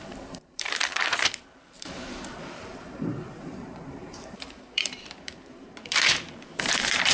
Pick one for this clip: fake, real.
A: fake